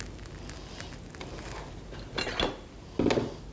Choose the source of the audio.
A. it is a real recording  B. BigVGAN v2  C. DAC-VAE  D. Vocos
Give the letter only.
A